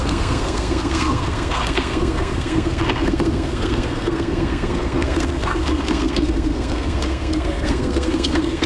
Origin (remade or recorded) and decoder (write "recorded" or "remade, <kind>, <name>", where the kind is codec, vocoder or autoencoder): remade, codec, SNAC